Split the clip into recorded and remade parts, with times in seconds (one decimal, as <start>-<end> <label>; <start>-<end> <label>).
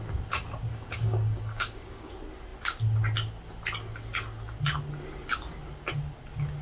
0.0-0.7 recorded; 0.7-2.1 remade; 2.1-6.6 recorded